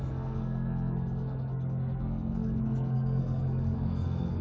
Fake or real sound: fake